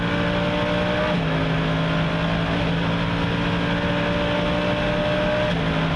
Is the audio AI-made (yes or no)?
no